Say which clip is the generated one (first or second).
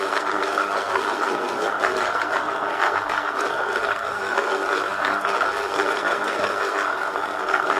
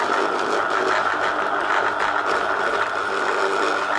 first